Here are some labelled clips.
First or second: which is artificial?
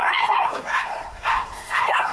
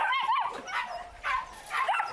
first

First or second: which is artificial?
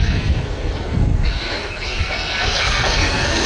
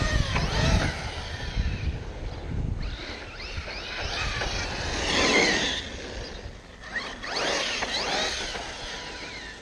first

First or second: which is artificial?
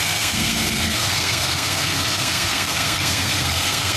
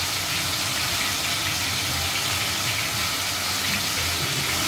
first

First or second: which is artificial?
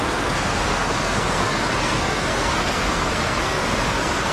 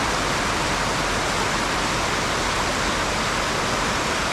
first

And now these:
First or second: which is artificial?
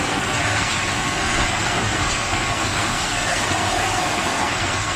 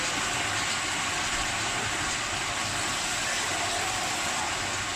first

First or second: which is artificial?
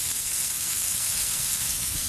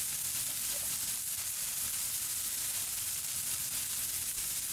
first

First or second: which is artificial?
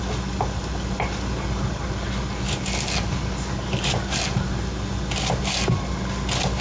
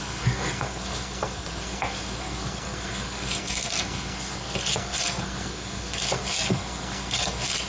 second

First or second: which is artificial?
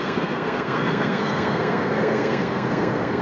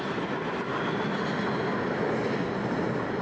first